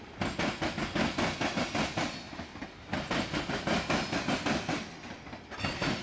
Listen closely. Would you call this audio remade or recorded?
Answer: recorded